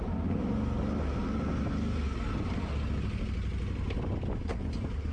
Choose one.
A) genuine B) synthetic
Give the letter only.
A